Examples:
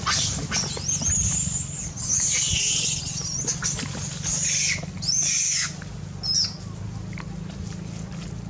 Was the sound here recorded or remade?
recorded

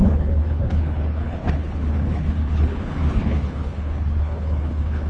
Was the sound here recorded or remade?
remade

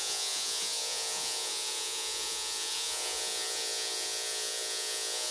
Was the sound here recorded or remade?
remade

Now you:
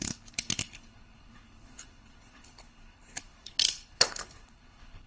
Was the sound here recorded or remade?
remade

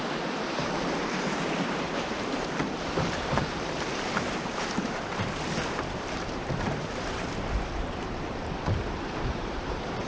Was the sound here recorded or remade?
remade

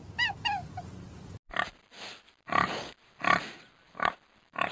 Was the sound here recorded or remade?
recorded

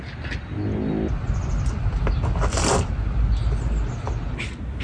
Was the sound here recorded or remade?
recorded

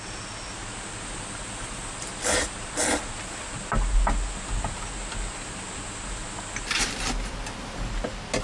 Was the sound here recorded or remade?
recorded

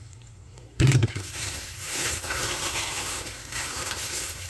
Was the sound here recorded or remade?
remade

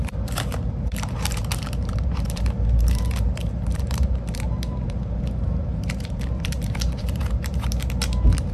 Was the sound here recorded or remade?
remade